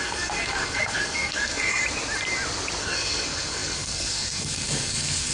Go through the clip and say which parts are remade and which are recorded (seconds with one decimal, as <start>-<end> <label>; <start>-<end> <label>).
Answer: 0.0-1.8 remade; 1.8-2.8 recorded; 2.8-5.3 remade